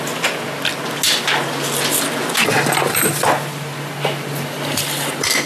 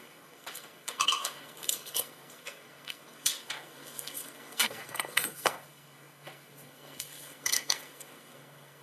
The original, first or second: first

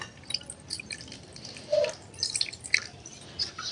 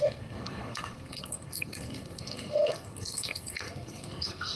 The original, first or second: first